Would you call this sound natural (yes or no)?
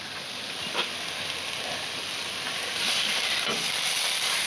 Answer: yes